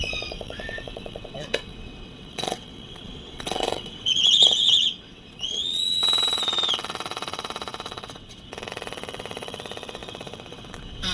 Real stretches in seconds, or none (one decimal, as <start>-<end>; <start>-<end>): none